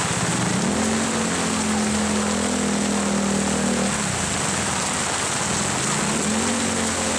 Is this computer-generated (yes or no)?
no